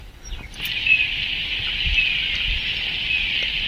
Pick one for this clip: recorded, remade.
recorded